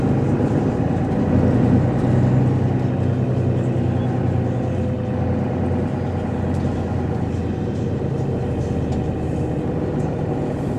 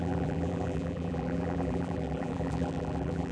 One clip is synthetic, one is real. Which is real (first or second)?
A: first